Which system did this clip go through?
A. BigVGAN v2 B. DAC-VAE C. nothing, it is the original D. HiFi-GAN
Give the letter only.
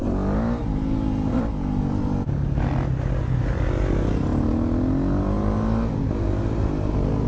C